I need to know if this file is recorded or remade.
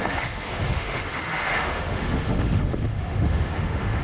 remade